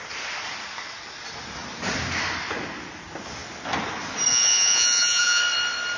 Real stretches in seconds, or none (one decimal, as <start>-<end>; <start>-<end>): 0.0-4.3; 5.4-6.0